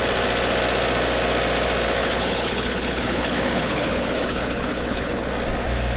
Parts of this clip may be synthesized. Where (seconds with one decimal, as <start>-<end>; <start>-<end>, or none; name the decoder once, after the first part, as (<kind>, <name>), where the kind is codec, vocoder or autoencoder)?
2.0-5.3 (codec, HILCodec)